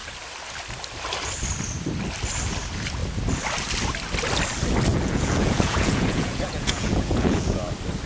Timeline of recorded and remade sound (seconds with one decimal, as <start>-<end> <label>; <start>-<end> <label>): 0.0-4.9 recorded; 4.9-7.6 remade; 7.6-8.1 recorded